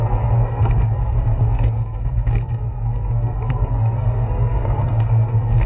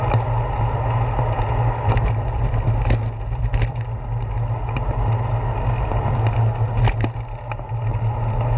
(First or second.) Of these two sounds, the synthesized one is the first